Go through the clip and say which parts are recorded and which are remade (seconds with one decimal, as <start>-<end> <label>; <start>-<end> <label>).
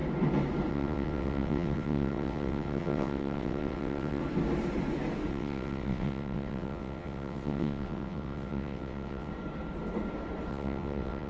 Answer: 0.0-0.7 recorded; 0.7-4.2 remade; 4.2-5.3 recorded; 5.3-9.3 remade; 9.3-10.5 recorded; 10.5-11.3 remade